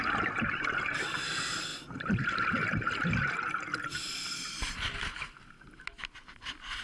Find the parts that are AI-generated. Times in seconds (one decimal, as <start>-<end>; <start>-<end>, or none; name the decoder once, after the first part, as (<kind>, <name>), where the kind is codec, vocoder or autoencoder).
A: none